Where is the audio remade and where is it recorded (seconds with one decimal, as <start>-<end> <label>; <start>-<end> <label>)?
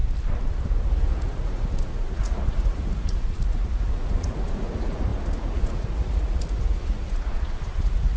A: 0.0-0.9 recorded; 0.9-8.2 remade